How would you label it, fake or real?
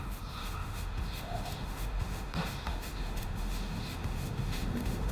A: fake